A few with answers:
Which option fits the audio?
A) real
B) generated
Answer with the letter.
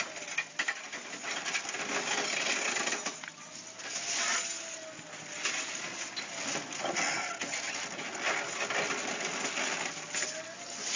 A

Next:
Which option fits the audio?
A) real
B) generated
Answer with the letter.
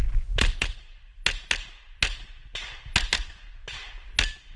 A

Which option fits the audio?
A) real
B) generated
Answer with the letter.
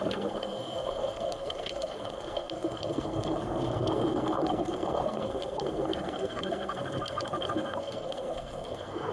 B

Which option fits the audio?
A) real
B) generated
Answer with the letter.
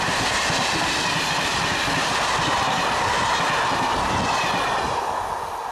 A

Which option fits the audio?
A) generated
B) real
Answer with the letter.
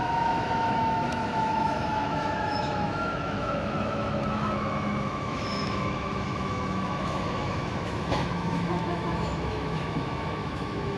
A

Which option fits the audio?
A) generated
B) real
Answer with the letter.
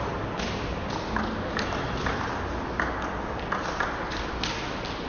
B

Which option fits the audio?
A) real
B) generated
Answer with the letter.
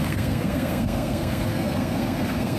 B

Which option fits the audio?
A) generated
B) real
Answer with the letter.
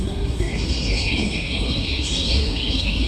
A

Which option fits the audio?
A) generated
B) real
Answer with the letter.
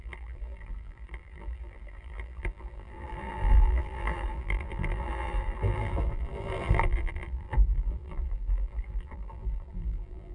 A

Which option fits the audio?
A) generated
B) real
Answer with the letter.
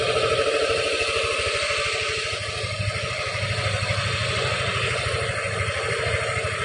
B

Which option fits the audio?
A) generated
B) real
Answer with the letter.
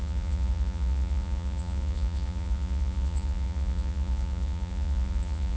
A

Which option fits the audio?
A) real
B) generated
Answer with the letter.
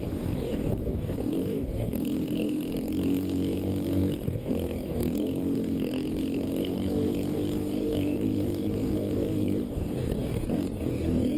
B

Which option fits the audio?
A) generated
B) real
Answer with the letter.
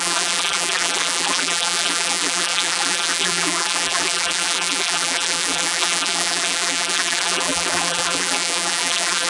A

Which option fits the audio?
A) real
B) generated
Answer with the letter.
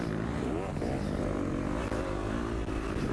A